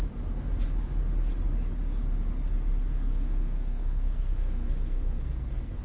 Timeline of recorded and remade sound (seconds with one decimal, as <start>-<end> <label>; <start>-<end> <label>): 0.0-2.9 recorded; 2.9-5.8 remade